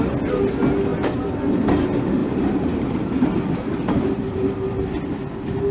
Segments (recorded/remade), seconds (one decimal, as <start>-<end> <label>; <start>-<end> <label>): 0.0-2.2 recorded; 2.2-5.2 remade; 5.2-5.7 recorded